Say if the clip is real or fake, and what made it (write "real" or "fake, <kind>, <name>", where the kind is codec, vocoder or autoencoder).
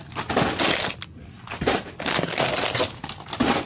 real